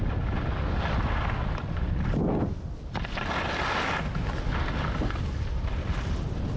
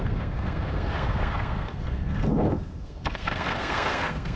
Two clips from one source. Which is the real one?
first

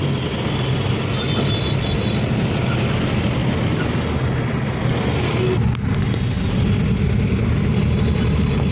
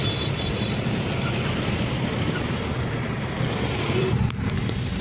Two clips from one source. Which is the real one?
first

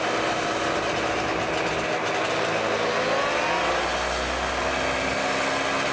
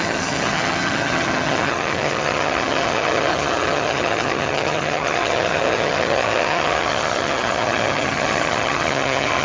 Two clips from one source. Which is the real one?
first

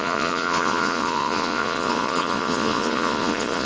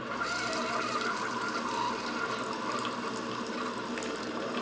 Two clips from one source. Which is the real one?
second